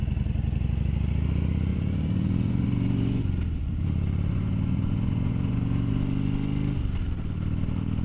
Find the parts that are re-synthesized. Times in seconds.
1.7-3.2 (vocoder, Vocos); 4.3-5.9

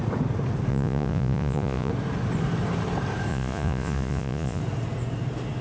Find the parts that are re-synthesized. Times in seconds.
0.7-1.9 (vocoder, Vocos); 3.3-4.6